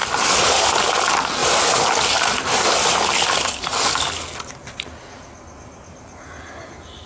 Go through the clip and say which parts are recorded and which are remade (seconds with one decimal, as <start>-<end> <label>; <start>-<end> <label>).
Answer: 0.0-7.1 recorded